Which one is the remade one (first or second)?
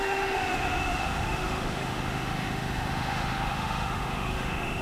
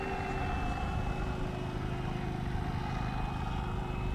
first